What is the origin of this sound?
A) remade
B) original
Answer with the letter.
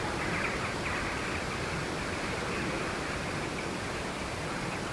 A